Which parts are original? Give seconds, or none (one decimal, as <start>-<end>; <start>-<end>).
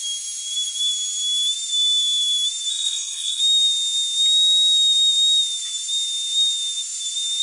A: 0.0-2.7; 3.4-7.4